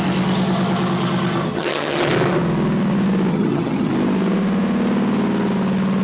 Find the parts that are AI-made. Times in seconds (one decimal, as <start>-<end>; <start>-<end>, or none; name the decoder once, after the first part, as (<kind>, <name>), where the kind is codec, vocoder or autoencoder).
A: 1.5-2.0 (vocoder, HiFi-GAN); 3.3-3.9